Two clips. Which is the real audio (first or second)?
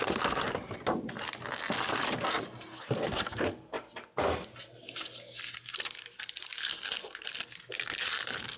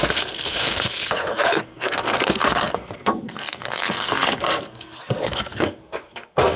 first